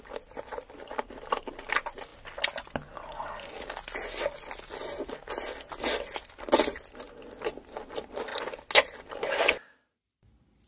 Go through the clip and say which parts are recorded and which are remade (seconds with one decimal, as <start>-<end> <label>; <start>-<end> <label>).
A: 0.0-10.7 recorded